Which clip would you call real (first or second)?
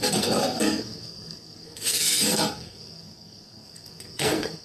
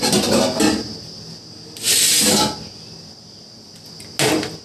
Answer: second